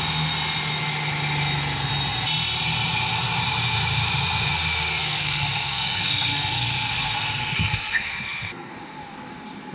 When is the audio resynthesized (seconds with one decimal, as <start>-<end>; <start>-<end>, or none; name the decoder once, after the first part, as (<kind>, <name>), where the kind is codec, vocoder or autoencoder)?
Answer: 5.0-8.7 (codec, SNAC)